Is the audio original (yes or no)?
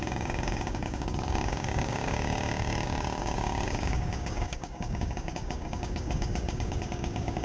no